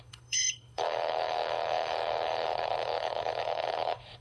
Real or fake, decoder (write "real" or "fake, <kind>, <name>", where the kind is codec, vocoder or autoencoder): fake, codec, HILCodec